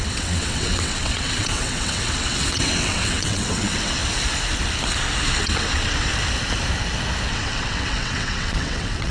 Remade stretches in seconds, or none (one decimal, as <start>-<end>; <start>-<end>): 0.0-4.0; 5.4-6.1; 7.3-9.1